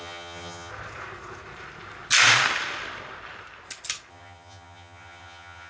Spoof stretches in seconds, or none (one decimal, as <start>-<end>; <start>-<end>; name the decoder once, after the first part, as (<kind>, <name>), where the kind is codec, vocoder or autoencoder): 0.0-0.7 (vocoder, HiFi-GAN); 4.1-5.7